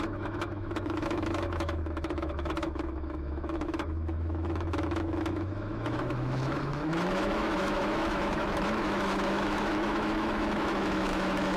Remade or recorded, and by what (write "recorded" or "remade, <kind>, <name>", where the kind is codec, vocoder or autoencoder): remade, autoencoder, DAC-VAE